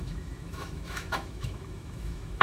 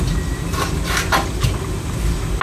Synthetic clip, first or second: first